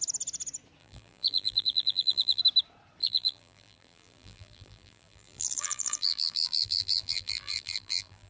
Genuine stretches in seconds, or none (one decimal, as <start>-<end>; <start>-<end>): 0.0-0.8; 2.4-3.0